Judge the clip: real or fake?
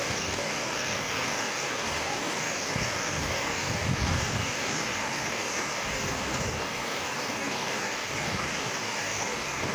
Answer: fake